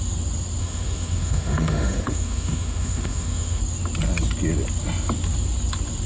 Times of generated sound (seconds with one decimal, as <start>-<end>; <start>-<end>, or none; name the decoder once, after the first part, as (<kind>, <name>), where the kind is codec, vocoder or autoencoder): 0.6-3.6 (autoencoder, DAC-VAE)